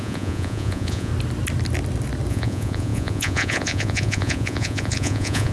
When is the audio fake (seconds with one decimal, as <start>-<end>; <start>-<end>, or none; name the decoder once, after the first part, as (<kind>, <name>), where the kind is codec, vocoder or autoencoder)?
0.0-1.1 (vocoder, Vocos); 2.3-5.5